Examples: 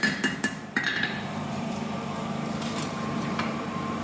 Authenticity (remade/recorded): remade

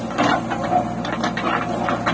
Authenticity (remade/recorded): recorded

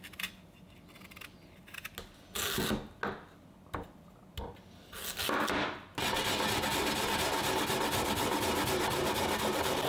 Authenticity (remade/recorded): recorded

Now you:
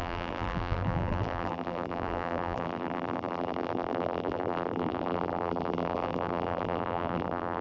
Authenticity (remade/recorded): remade